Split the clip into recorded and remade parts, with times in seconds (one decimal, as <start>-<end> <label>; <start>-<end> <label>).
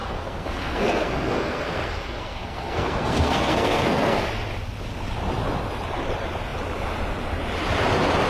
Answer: 0.0-4.2 remade; 4.2-8.3 recorded